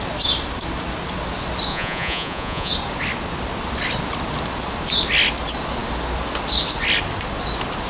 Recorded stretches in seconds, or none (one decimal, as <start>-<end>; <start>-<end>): 0.0-1.7; 2.7-7.9